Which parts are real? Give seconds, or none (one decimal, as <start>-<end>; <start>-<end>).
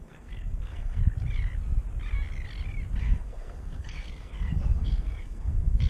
1.0-3.0